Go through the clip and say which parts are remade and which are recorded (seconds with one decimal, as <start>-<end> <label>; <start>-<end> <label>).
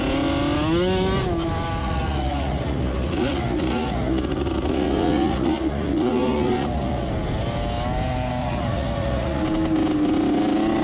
0.0-1.8 recorded; 1.8-7.1 remade; 7.1-8.4 recorded; 8.4-9.4 remade; 9.4-10.8 recorded